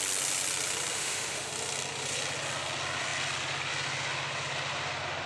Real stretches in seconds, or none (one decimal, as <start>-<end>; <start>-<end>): 0.0-0.9; 1.5-5.3